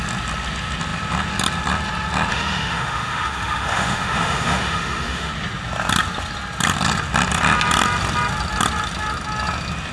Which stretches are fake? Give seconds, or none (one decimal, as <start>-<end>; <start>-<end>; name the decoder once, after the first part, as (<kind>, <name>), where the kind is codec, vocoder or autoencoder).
2.3-5.3 (autoencoder, DAC-VAE)